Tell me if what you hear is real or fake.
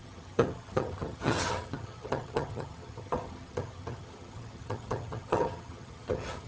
fake